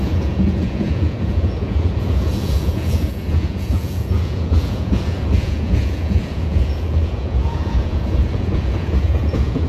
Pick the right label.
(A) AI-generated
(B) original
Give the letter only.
A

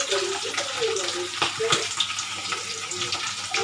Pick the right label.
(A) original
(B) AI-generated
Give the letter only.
A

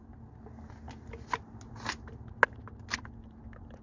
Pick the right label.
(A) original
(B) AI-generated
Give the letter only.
A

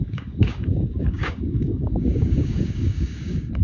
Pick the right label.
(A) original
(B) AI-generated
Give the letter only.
B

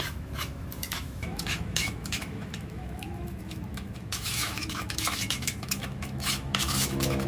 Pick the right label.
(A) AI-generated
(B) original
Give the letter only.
A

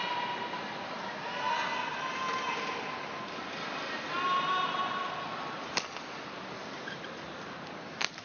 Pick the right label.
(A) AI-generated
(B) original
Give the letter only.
B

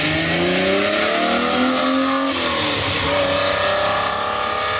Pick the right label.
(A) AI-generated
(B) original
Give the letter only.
B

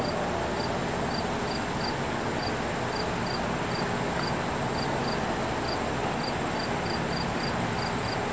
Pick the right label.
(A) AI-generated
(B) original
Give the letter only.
B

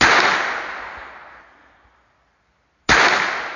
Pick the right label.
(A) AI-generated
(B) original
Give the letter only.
B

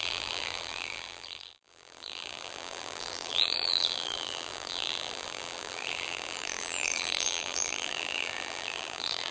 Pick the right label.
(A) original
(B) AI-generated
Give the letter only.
B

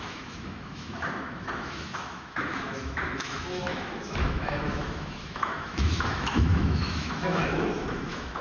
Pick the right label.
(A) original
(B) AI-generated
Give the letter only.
B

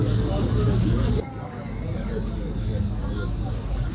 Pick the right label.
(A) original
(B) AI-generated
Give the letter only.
B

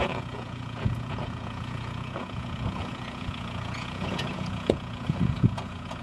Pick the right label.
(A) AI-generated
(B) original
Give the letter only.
A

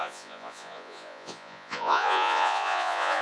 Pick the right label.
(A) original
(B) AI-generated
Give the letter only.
B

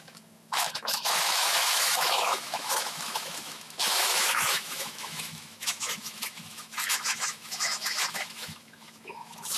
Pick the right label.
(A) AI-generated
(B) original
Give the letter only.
A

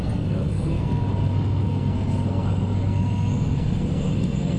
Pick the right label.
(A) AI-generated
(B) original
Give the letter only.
A